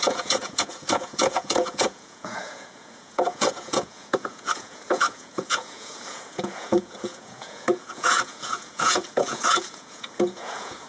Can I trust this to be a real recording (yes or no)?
no